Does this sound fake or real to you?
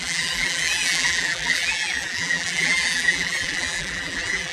fake